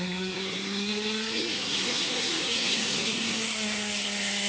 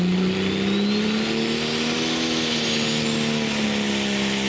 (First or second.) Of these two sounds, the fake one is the first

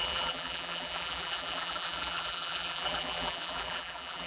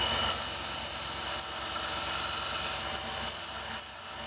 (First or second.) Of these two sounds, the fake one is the first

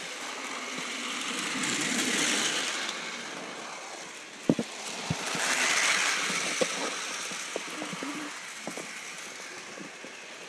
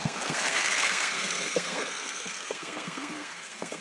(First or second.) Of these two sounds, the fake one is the second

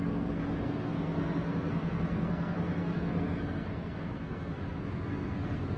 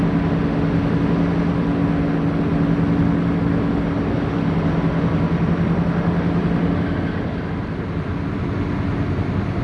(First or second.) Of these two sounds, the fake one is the first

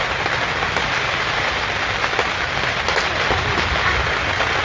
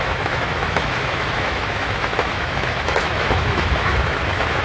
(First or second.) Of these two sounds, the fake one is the second